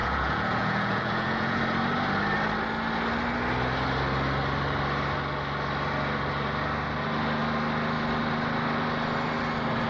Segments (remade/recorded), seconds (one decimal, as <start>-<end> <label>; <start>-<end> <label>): 0.0-1.6 remade; 1.6-9.9 recorded